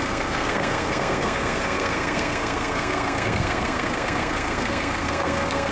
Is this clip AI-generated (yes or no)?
yes